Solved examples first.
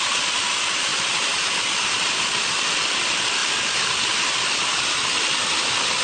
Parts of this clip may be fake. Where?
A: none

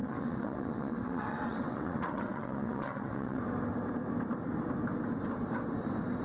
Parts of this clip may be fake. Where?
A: 0.0-3.4 (vocoder, WaveNeXt)

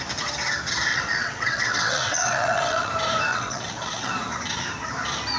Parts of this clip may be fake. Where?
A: 0.9-2.9 (vocoder, WaveNeXt); 3.3-4.1

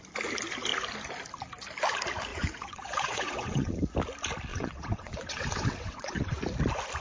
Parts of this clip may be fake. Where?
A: 2.3-3.7 (vocoder, WaveNeXt); 4.5-6.4